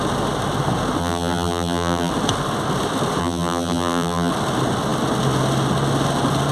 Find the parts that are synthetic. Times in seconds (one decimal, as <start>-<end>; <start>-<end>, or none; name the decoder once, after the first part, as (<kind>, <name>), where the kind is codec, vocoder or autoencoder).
1.0-2.1 (vocoder, BigVGAN v2); 3.2-4.3